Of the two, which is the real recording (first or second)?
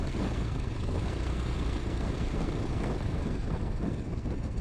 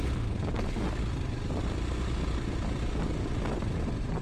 second